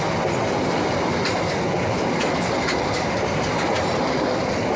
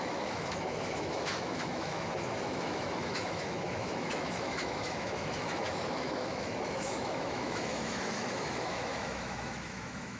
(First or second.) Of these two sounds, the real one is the first